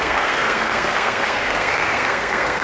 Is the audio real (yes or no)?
no